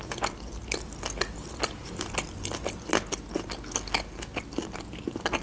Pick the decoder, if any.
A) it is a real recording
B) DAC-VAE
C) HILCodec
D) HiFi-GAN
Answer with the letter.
A